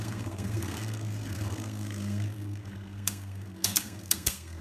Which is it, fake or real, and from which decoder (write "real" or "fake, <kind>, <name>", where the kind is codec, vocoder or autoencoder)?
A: fake, codec, SNAC